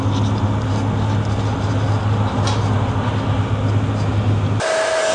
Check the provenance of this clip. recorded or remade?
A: recorded